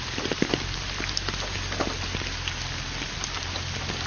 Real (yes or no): yes